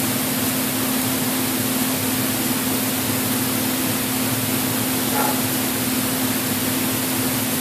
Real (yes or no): yes